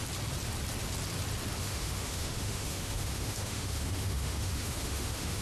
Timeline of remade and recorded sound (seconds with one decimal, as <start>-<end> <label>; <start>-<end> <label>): 0.0-1.6 recorded; 1.6-5.4 remade